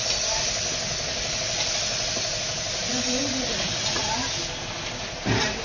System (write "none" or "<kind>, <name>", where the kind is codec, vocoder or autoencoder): none